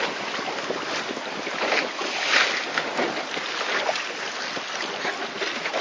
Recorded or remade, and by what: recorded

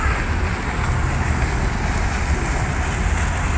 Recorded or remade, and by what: recorded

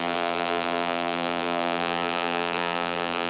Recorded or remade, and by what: remade, vocoder, BigVGAN v2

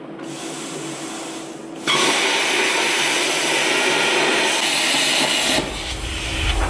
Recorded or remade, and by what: recorded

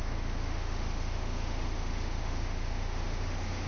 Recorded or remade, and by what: remade, autoencoder, DAC-VAE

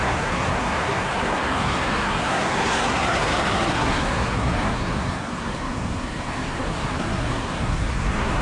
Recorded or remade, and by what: remade, codec, SNAC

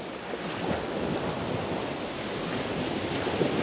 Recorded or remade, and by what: recorded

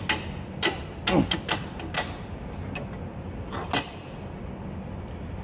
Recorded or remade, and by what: recorded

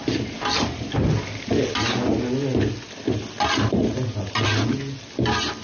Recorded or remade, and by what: recorded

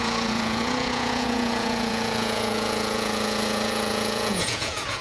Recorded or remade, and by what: remade, vocoder, Vocos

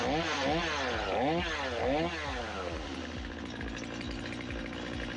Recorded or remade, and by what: recorded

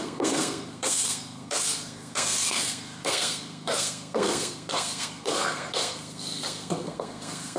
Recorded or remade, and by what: remade, codec, SNAC